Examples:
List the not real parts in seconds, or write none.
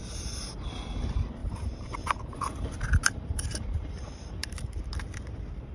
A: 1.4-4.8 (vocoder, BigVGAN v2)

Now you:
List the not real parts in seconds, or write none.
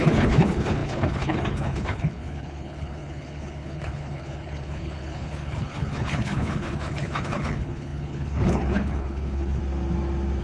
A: 0.0-9.6 (codec, HILCodec)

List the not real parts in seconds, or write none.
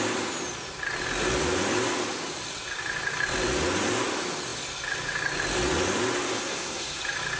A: 6.4-7.0 (codec, SNAC)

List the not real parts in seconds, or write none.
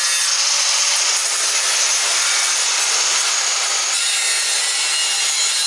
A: 1.2-4.6 (vocoder, BigVGAN v2)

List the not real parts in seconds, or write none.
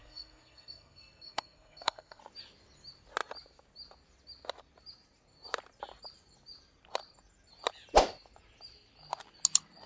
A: 0.0-2.2 (codec, SNAC)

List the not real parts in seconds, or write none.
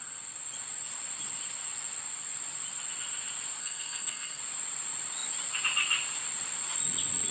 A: 3.6-4.4 (codec, SNAC)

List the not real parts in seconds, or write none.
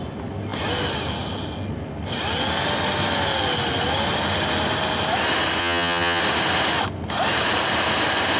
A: 5.6-6.2 (vocoder, HiFi-GAN)